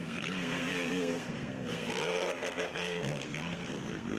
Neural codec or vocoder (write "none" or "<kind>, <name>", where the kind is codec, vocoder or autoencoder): codec, SNAC